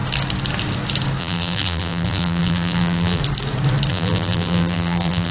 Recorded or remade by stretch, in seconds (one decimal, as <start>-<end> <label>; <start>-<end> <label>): 0.0-1.2 recorded; 1.2-3.2 remade; 3.2-3.9 recorded; 3.9-5.3 remade